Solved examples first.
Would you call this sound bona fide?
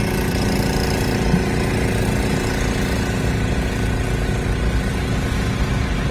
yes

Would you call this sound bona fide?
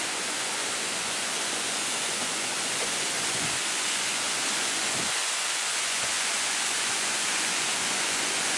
no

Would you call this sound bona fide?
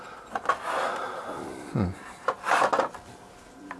yes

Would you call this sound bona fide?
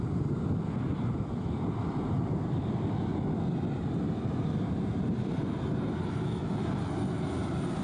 yes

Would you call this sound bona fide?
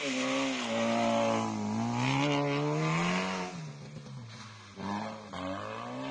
yes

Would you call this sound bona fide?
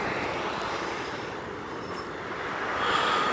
yes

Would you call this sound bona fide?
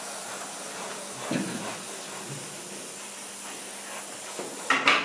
yes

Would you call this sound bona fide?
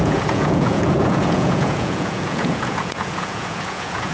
no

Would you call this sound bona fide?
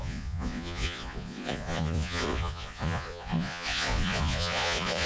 no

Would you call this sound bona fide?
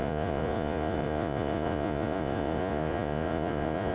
no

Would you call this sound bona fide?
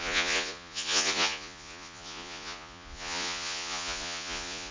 no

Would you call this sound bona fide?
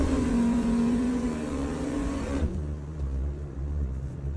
no